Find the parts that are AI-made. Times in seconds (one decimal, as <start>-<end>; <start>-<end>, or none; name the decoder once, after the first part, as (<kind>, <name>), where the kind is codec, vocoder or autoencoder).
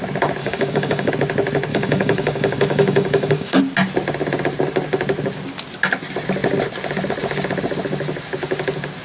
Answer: 0.4-1.1 (codec, DAC); 1.7-3.6